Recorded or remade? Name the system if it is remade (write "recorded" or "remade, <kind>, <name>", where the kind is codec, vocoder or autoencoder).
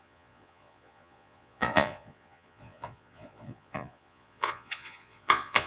remade, vocoder, Vocos